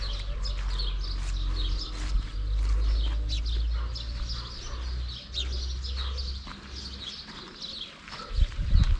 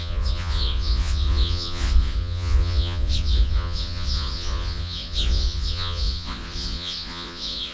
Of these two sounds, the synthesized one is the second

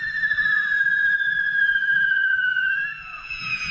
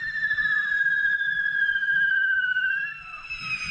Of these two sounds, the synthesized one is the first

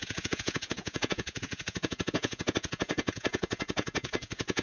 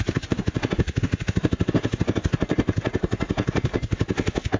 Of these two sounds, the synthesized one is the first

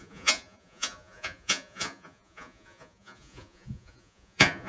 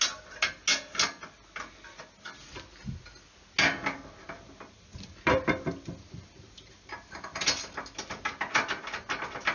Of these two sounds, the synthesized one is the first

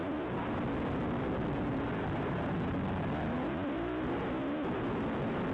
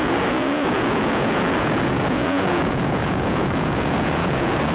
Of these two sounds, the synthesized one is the second